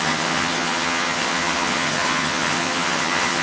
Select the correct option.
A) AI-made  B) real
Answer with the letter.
A